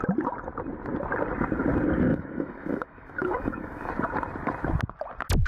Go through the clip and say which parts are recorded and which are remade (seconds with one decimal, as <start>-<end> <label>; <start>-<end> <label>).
0.0-2.1 recorded; 2.1-3.9 remade; 3.9-5.5 recorded